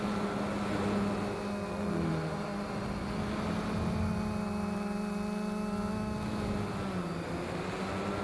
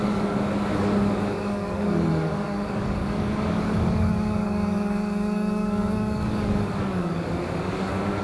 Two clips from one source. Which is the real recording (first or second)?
first